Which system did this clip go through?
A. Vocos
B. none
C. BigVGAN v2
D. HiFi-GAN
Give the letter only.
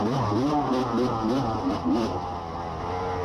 B